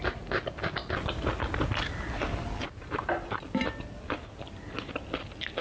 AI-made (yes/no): no